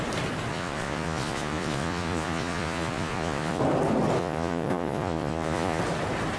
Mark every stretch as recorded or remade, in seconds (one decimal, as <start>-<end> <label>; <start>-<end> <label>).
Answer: 0.0-0.5 recorded; 0.5-3.6 remade; 3.6-4.2 recorded; 4.2-5.8 remade; 5.8-6.4 recorded